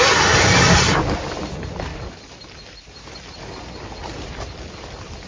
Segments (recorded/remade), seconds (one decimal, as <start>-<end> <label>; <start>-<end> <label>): 0.0-1.9 recorded; 1.9-5.3 remade